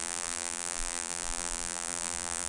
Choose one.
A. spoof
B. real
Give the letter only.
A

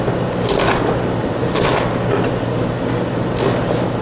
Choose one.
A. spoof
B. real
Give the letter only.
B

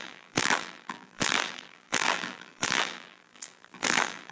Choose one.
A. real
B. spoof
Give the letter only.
B